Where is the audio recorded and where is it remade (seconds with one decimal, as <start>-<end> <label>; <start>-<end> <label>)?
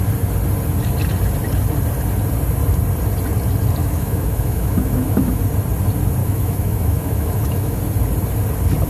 0.0-3.8 recorded; 3.8-5.4 remade; 5.4-6.2 recorded; 6.2-7.8 remade; 7.8-8.9 recorded